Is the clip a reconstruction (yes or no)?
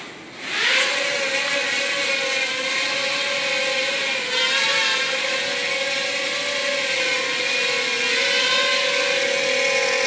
no